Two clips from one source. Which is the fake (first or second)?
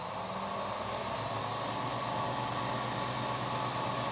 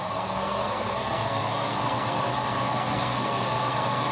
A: second